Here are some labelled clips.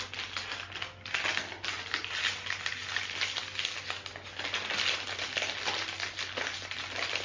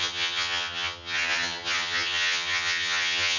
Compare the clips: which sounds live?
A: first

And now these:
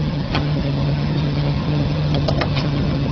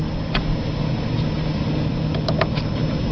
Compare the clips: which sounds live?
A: second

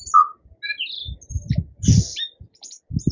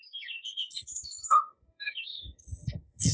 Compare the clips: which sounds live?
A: first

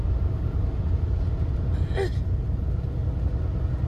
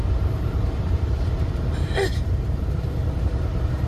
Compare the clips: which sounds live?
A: first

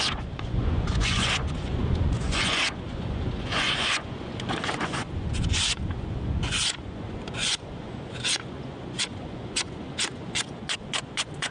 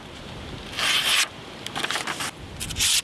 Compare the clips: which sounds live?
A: second